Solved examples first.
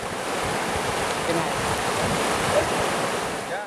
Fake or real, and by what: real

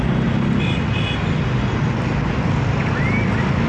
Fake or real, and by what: real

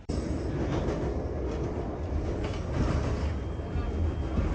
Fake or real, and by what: real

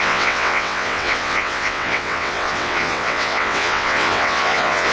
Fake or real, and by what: fake, vocoder, WaveNeXt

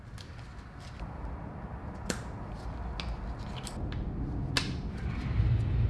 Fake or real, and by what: real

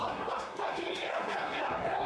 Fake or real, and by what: fake, codec, SNAC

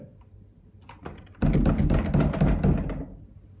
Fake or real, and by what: real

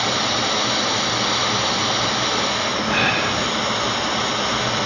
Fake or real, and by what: real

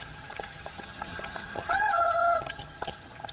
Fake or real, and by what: fake, vocoder, HiFi-GAN